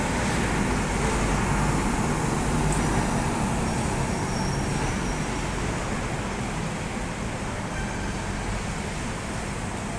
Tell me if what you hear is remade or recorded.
recorded